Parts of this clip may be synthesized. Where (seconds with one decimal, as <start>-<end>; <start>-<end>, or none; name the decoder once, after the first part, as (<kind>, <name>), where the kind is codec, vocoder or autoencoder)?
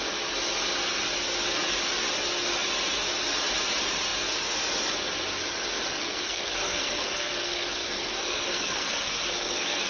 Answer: 6.0-9.9 (codec, SNAC)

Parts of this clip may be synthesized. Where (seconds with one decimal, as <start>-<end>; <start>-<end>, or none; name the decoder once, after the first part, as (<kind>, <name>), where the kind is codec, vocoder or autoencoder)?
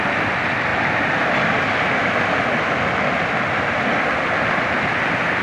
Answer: none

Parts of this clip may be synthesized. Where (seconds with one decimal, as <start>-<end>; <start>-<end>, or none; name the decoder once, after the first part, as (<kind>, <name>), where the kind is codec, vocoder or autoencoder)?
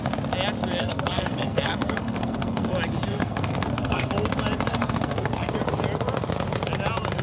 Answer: 0.8-2.7 (codec, SNAC); 3.1-4.1; 4.7-5.5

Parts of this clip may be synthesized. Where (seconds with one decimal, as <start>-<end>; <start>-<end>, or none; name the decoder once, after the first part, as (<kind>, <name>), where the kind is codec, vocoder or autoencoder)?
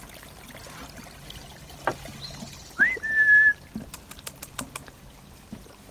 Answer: none